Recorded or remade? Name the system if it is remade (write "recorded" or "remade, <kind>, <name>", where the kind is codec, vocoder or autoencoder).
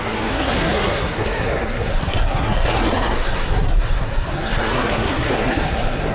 remade, codec, SNAC